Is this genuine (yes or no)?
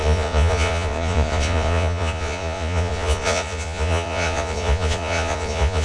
no